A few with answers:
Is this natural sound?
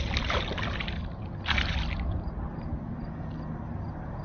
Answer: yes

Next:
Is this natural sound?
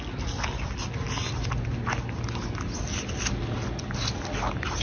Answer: yes